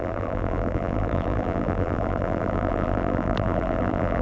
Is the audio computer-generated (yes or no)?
yes